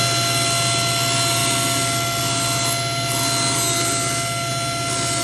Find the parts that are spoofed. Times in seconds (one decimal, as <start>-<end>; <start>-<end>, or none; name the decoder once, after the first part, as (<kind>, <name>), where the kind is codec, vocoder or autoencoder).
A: none